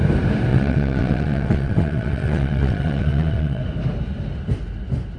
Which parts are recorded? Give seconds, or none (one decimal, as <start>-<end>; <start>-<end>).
0.0-0.5; 3.6-5.2